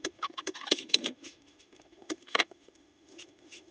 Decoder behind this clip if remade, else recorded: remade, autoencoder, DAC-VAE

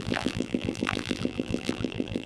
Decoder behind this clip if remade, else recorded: remade, vocoder, BigVGAN v2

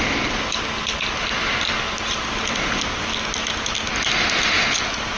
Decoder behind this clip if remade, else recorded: recorded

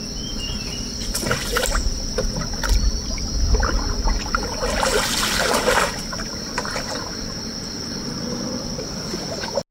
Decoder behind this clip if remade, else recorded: recorded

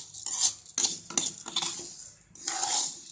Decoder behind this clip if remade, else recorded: recorded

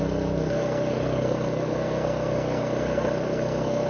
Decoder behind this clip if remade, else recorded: remade, codec, SNAC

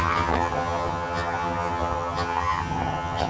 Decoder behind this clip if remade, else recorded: remade, vocoder, HiFi-GAN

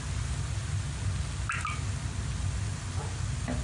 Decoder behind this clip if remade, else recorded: recorded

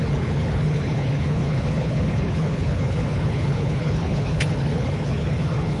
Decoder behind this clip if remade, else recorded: remade, codec, HILCodec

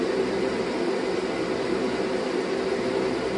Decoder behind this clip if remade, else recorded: recorded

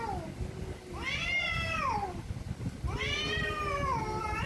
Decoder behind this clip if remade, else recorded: recorded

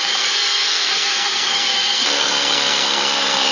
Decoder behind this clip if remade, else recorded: remade, codec, SNAC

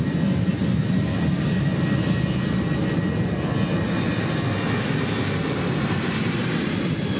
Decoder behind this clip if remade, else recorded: recorded